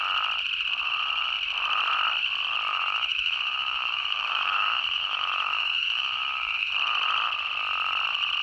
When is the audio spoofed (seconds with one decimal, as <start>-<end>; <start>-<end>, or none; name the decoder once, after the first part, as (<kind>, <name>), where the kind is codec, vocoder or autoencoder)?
2.7-6.7 (autoencoder, DAC-VAE)